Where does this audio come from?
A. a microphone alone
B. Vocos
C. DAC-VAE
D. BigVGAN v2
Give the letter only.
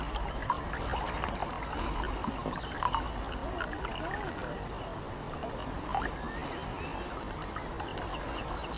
A